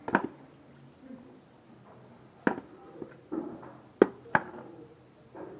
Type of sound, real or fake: real